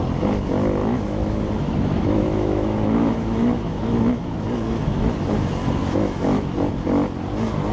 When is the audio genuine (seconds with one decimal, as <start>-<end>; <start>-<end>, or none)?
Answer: 0.0-0.8; 5.1-5.8; 6.7-7.7